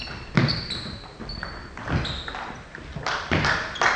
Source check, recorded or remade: recorded